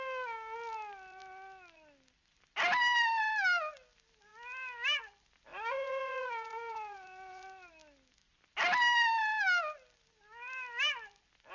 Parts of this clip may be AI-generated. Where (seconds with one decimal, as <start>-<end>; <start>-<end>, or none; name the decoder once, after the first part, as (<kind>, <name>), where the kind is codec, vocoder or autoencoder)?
5.5-7.7 (vocoder, Vocos)